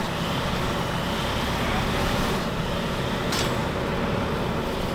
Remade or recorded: recorded